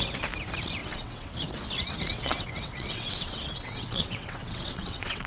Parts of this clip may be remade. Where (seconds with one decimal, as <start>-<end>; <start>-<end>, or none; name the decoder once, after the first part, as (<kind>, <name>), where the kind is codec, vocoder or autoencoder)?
0.8-1.3 (vocoder, WaveNeXt); 2.1-5.3